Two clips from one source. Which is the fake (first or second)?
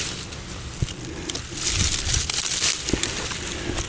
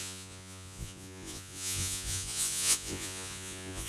second